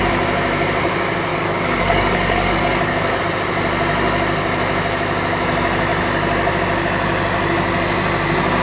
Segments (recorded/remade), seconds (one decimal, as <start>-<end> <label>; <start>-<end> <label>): 0.0-1.3 recorded; 1.3-3.2 remade; 3.2-8.6 recorded